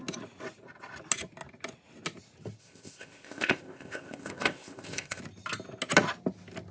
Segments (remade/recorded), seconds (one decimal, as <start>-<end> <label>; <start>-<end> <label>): 0.0-2.6 recorded; 2.6-5.2 remade; 5.2-6.7 recorded